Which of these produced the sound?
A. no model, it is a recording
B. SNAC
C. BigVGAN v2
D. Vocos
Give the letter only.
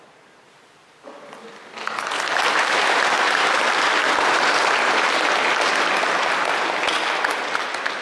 A